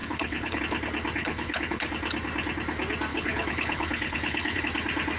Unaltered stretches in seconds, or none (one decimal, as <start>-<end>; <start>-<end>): 0.6-1.2; 1.9-3.1; 4.6-5.2